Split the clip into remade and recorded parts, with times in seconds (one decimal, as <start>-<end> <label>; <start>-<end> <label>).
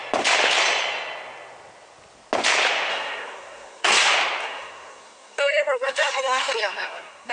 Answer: 0.0-2.9 recorded; 2.9-3.9 remade; 3.9-4.4 recorded; 4.4-7.3 remade